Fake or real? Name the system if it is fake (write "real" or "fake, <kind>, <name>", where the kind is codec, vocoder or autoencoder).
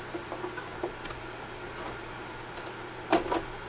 real